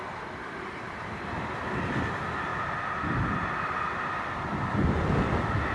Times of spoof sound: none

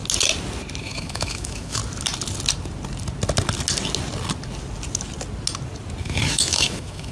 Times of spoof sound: 0.8-1.8 (autoencoder, DAC-VAE); 6.0-7.1

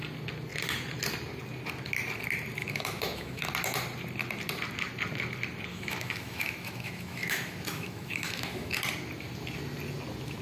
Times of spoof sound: 2.6-3.4 (autoencoder, DAC-VAE); 5.7-8.8

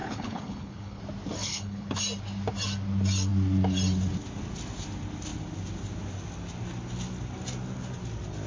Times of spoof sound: 0.0-1.0 (codec, HILCodec); 1.4-2.0

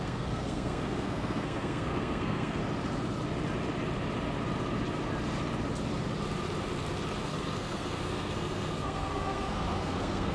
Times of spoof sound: 0.0-2.6 (codec, SNAC); 7.2-10.3